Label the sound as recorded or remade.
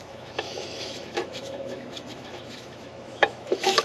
remade